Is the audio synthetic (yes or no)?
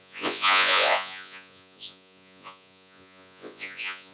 yes